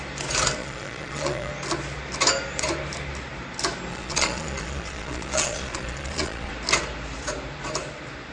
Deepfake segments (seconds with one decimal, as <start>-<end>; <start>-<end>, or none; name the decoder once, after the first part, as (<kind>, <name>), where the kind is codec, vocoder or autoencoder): 0.6-1.5 (vocoder, Vocos); 3.9-6.5